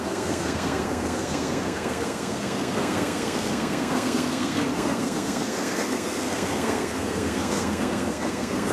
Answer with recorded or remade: remade